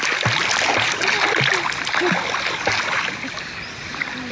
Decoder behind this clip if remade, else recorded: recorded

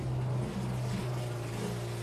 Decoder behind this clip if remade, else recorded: recorded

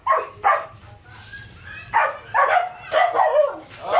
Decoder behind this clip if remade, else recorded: recorded